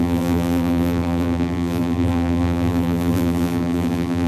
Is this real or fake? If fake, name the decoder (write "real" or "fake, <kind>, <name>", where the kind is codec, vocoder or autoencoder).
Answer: fake, vocoder, BigVGAN v2